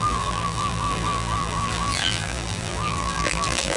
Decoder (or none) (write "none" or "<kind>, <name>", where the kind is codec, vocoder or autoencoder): vocoder, BigVGAN v2